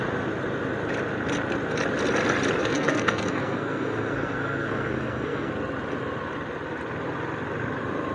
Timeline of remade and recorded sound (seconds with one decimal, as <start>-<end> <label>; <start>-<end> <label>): 0.0-2.6 recorded; 2.6-5.5 remade; 5.5-8.1 recorded